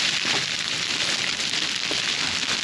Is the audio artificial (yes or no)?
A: no